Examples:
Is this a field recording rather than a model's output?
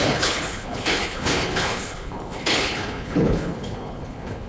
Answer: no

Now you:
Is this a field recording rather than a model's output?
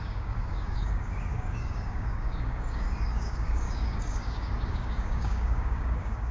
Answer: no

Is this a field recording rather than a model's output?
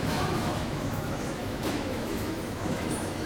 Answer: no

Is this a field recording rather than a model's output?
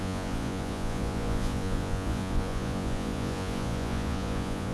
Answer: no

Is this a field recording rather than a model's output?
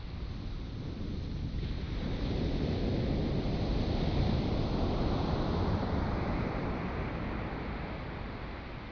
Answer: yes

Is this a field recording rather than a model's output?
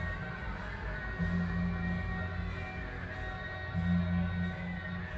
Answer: yes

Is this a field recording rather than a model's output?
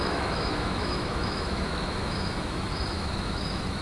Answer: no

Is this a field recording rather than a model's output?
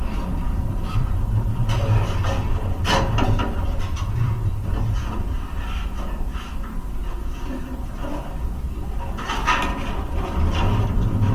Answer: yes